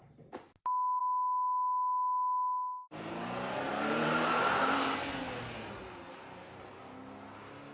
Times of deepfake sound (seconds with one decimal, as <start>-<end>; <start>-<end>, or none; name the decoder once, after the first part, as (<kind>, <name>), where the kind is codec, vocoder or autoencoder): 3.7-6.7 (vocoder, BigVGAN v2)